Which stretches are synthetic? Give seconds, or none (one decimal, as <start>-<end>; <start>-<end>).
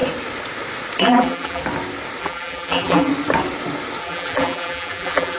1.0-1.6; 2.2-3.1; 4.0-5.4